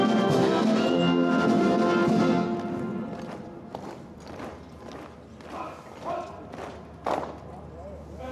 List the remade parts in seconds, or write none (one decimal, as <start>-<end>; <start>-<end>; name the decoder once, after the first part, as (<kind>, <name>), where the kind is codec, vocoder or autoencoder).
none